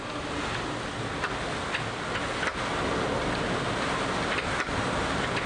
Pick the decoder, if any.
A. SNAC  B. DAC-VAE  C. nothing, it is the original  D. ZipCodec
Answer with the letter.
C